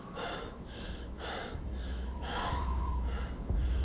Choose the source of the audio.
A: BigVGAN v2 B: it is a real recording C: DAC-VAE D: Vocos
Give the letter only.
C